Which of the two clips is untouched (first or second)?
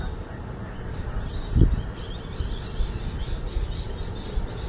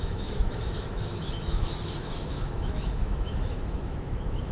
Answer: first